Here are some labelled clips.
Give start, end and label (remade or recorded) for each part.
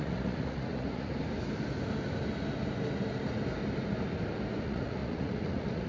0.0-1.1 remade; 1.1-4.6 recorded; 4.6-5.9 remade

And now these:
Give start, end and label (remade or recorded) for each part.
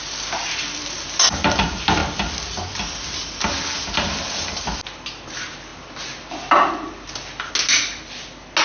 0.0-8.6 recorded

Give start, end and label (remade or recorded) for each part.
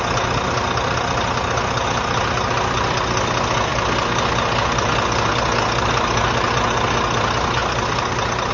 0.0-8.5 recorded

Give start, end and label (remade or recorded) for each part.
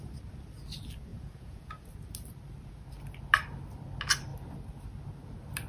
0.0-1.1 recorded; 1.1-1.9 remade; 1.9-5.7 recorded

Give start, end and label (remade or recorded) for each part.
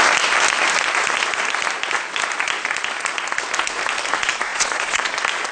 0.0-4.5 recorded; 4.5-5.1 remade; 5.1-5.5 recorded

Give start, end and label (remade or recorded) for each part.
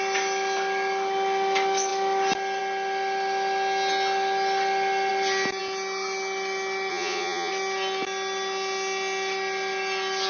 0.0-6.9 recorded; 6.9-7.5 remade; 7.5-10.3 recorded